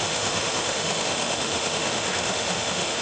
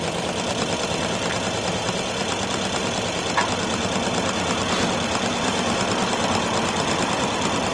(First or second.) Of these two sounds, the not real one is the first